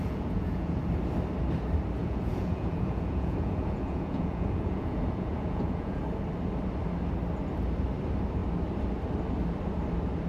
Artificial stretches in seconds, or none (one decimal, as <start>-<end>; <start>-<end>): 0.0-0.8; 2.0-6.0